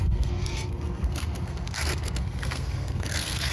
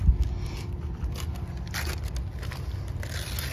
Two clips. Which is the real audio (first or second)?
second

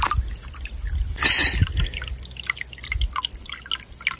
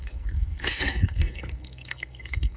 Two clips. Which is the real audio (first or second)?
first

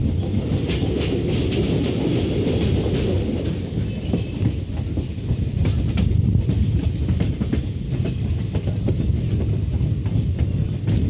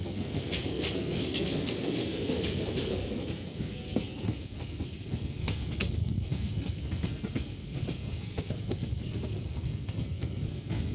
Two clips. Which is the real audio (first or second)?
first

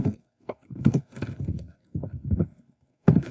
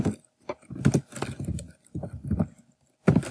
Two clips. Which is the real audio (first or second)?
second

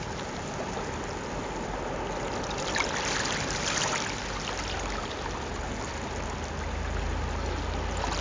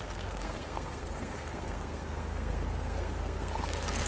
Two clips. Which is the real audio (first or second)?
first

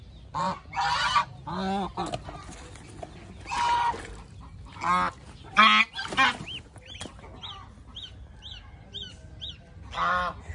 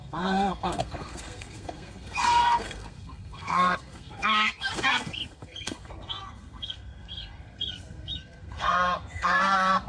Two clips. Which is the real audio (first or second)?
first